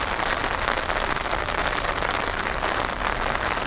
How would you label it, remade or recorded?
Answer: recorded